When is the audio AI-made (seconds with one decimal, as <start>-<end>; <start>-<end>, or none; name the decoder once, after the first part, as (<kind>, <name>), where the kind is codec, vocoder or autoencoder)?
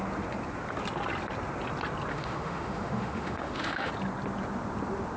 2.1-3.9 (autoencoder, DAC-VAE)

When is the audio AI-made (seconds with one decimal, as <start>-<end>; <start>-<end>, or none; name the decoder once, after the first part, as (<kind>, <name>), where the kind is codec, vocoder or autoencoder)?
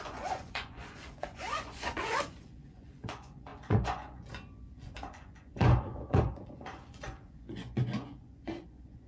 0.0-9.1 (vocoder, Vocos)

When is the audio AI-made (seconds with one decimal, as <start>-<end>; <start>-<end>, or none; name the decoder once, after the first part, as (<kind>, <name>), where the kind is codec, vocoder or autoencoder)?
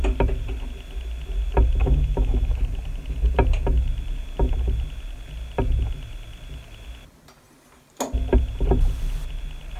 1.8-2.6 (autoencoder, DAC-VAE)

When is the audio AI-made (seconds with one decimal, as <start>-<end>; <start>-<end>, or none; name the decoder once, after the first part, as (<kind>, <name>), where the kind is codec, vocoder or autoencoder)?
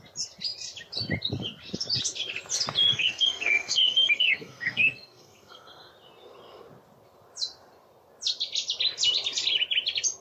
2.9-5.9 (codec, SNAC)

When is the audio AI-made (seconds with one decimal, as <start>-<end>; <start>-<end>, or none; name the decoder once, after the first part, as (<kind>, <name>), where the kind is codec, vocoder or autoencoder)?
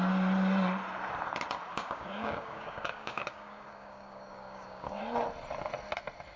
1.7-5.0 (codec, DAC)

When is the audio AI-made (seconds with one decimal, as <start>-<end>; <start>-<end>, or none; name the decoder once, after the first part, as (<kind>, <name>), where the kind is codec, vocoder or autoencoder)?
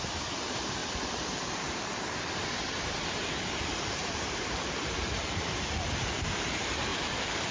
0.0-7.5 (vocoder, BigVGAN v2)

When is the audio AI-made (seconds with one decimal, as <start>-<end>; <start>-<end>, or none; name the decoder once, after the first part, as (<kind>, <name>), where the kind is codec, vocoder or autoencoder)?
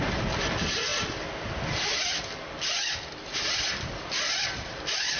none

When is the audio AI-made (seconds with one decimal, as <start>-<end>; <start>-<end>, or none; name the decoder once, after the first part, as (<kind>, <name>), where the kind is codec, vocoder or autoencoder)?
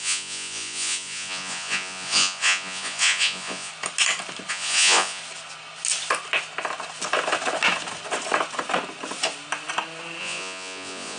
0.0-3.7 (vocoder, Vocos); 4.5-5.2; 10.2-11.2